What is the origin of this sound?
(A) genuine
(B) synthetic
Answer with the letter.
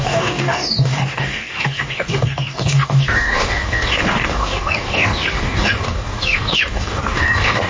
B